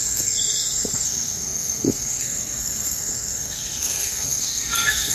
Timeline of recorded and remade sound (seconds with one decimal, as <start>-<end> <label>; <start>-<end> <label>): 0.0-5.1 remade